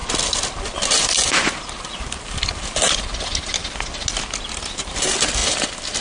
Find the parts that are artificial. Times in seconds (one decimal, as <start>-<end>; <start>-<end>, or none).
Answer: none